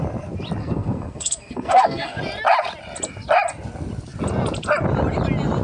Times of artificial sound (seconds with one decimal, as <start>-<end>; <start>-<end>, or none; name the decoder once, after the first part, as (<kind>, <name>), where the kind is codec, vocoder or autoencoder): 0.6-2.2 (codec, SNAC)